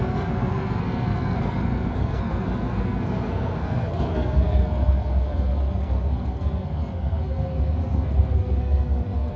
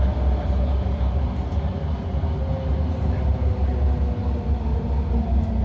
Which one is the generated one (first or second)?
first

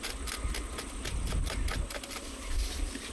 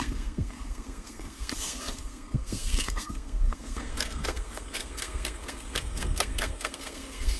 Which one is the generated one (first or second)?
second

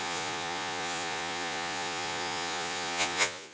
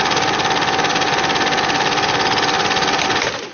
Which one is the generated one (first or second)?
first